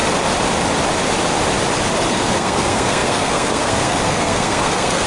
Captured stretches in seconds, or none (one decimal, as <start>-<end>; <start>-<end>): 0.0-2.1